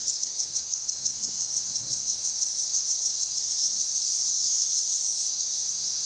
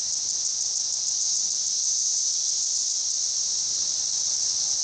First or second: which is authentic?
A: second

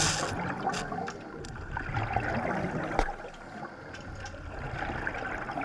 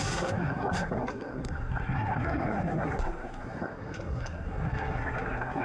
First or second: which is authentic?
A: first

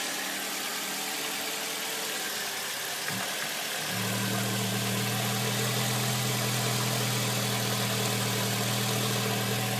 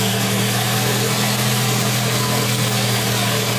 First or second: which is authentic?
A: first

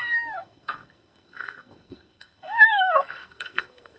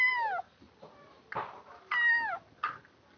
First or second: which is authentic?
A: second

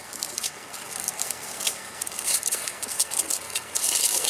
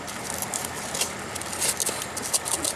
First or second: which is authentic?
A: second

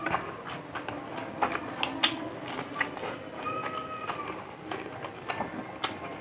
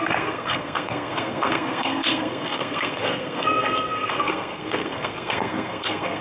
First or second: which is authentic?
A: first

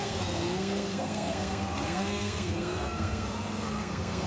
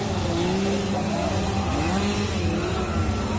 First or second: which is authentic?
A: second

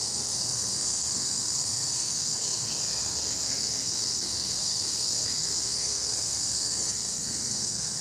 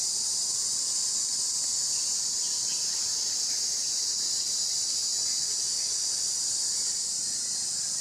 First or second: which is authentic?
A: second